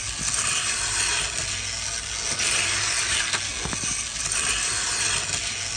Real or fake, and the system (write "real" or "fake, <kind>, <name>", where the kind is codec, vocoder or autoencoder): real